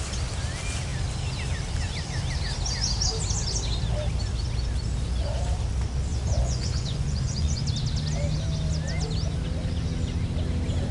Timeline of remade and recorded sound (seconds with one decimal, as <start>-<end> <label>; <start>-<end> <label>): 0.0-6.1 recorded; 6.1-7.6 remade; 7.6-10.9 recorded